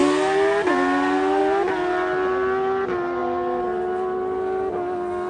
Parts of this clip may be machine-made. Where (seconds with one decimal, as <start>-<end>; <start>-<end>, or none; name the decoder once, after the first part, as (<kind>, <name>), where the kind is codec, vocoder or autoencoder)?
none